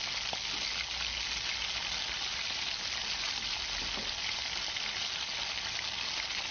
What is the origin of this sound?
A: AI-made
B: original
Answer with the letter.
B